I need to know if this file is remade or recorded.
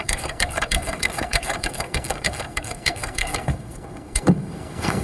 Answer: remade